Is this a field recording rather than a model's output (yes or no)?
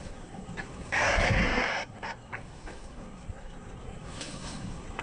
no